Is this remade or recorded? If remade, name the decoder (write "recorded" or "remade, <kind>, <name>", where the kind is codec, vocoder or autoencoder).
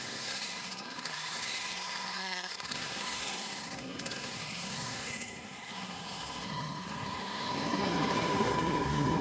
remade, codec, SNAC